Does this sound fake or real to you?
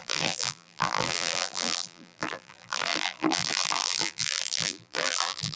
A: fake